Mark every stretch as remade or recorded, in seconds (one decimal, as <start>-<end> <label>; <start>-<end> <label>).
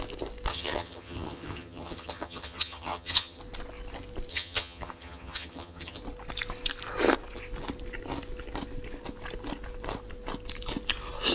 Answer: 0.0-0.5 recorded; 0.5-3.4 remade; 3.4-4.3 recorded; 4.3-6.0 remade; 6.0-11.3 recorded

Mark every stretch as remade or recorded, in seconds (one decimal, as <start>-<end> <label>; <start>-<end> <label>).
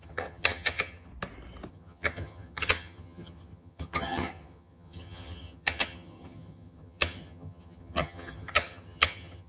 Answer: 0.0-1.1 remade; 1.1-1.7 recorded; 1.7-9.5 remade